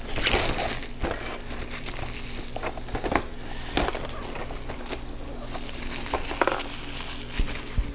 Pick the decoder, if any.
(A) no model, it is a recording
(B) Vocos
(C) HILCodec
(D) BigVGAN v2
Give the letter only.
A